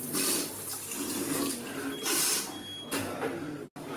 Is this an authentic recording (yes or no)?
yes